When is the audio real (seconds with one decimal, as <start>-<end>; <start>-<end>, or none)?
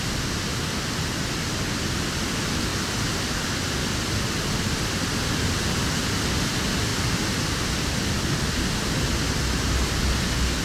0.0-10.6